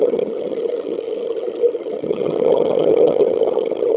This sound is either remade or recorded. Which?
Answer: remade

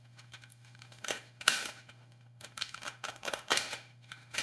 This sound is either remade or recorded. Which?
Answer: remade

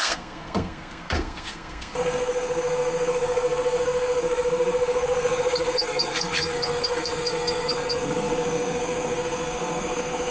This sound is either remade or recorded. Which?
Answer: remade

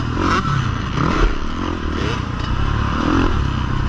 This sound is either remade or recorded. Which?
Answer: recorded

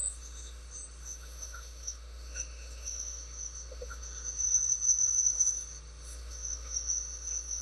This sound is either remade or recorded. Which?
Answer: remade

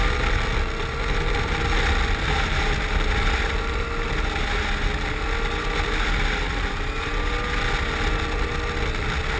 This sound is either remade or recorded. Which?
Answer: recorded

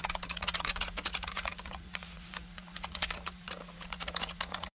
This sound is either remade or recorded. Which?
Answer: remade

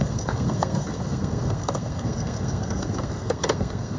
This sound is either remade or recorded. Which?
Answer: remade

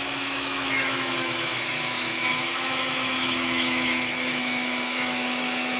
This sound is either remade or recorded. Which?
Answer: remade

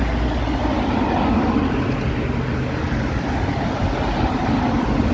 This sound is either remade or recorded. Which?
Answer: recorded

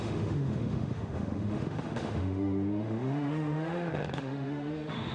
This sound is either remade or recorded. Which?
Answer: remade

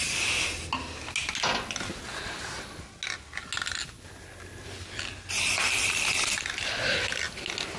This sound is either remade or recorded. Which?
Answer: recorded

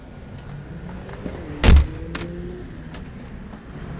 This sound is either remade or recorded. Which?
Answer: recorded